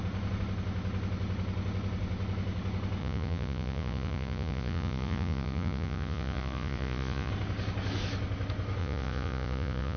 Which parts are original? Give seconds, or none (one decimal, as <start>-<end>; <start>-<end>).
0.0-3.0; 7.3-8.8